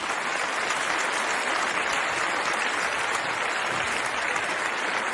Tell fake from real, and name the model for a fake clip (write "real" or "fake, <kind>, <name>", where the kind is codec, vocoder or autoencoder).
real